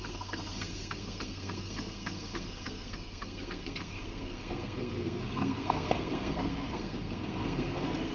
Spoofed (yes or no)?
yes